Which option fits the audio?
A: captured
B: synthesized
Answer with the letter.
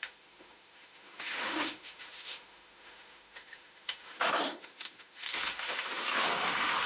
B